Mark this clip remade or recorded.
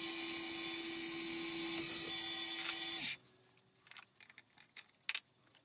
recorded